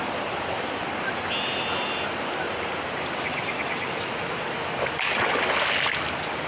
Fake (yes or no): no